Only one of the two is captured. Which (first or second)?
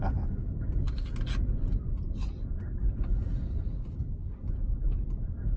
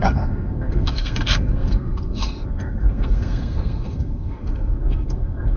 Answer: first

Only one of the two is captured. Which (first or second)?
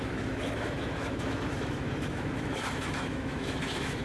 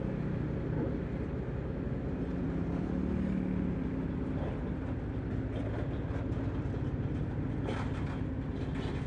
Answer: second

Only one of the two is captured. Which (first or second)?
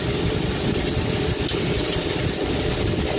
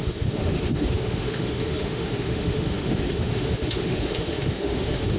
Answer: first